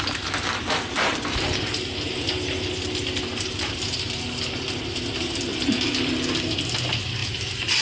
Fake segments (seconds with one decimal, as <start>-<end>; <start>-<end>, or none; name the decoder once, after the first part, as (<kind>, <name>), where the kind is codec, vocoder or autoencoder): none